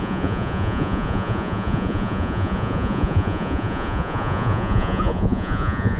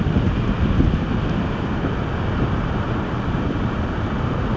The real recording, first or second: second